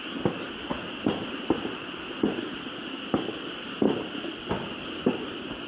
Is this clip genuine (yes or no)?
yes